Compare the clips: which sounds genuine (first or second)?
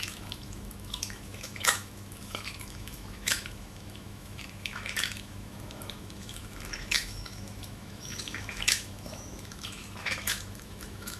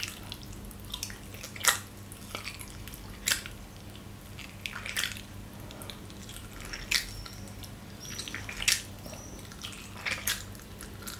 second